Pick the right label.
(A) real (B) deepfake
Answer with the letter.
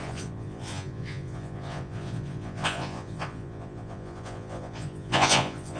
B